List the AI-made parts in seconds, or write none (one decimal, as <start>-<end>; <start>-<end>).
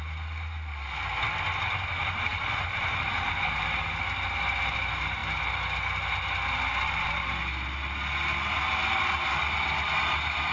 2.3-3.6